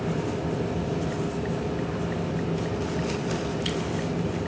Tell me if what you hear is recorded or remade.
recorded